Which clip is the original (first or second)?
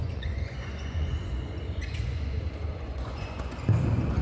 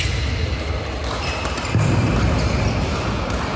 second